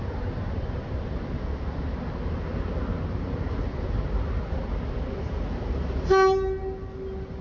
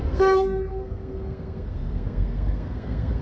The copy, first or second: second